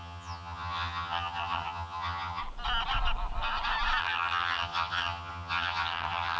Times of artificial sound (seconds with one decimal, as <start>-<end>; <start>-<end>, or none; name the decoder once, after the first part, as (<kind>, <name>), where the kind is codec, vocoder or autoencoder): 0.0-2.4 (vocoder, HiFi-GAN); 4.0-6.4